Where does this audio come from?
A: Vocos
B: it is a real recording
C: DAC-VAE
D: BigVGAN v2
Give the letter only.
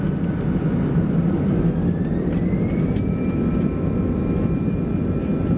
B